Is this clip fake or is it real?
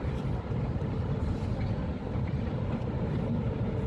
real